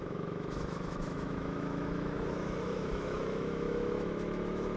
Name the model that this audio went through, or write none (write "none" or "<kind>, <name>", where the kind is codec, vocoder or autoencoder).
autoencoder, DAC-VAE